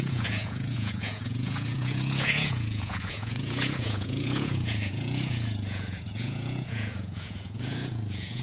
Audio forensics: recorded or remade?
remade